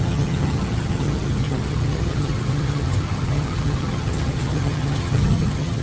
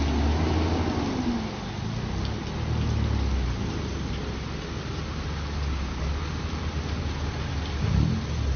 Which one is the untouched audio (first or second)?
second